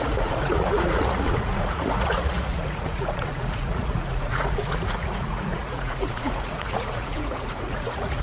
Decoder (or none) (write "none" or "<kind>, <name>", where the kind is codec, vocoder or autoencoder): vocoder, Vocos